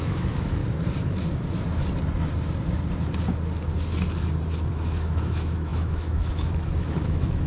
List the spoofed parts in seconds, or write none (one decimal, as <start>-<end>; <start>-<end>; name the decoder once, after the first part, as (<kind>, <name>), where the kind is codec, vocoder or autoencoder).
0.0-0.6 (autoencoder, DAC-VAE); 4.7-7.5